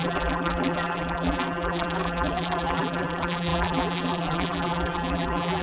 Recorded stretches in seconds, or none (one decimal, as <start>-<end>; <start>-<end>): none